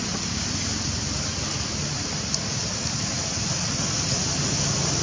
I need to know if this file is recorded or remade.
recorded